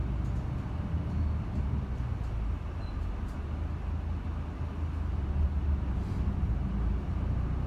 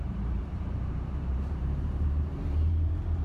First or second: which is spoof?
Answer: second